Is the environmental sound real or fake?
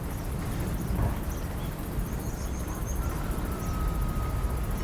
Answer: real